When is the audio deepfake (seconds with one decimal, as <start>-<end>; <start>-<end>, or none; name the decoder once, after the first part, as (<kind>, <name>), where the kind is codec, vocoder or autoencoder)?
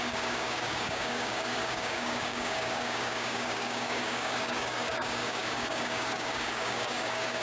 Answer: 0.0-7.4 (codec, DAC)